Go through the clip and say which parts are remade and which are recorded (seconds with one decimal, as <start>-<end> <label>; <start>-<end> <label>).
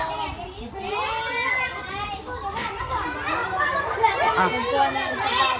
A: 0.0-5.6 recorded